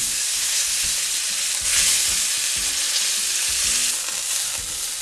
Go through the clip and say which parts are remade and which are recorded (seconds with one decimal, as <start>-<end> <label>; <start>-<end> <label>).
0.0-1.0 remade; 1.0-5.0 recorded